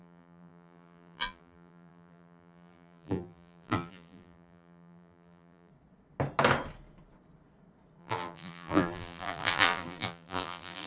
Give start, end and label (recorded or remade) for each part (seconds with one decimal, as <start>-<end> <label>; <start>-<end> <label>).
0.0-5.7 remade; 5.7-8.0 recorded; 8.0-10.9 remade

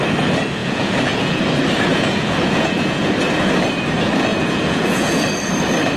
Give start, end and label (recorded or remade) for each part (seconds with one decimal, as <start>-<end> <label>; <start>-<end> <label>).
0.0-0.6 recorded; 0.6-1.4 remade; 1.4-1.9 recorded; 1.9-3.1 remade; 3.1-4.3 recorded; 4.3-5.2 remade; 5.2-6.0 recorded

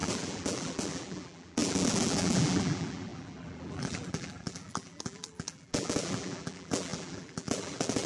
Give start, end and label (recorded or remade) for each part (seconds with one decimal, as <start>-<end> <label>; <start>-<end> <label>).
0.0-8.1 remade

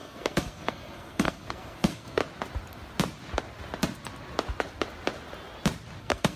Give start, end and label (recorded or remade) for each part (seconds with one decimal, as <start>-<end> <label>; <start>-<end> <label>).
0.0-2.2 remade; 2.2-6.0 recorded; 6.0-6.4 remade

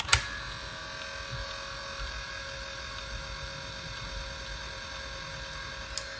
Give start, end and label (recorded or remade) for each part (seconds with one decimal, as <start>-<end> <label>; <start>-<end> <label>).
0.0-6.2 recorded